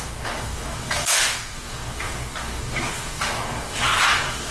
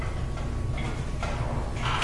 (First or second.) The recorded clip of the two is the second